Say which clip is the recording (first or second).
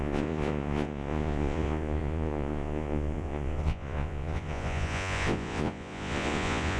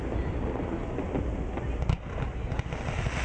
second